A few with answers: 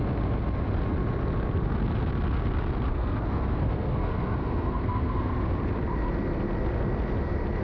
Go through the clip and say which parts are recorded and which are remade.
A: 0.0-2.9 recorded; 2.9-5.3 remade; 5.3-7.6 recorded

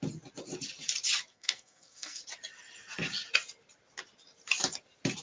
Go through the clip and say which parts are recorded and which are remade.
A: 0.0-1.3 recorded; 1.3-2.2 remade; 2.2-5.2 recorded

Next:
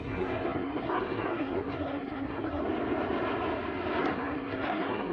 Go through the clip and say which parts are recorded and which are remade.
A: 0.0-2.6 remade; 2.6-4.0 recorded; 4.0-5.1 remade

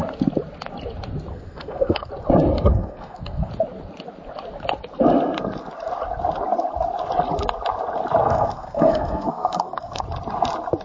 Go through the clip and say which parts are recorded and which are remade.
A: 0.0-1.3 recorded; 1.3-2.1 remade; 2.1-2.7 recorded; 2.7-3.5 remade; 3.5-8.2 recorded; 8.2-10.0 remade; 10.0-10.8 recorded

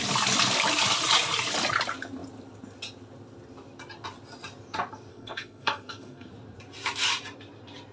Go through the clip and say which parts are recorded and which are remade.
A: 0.0-5.1 recorded; 5.1-6.3 remade; 6.3-7.9 recorded